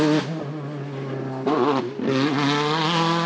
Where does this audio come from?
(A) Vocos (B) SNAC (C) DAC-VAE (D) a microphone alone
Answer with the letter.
D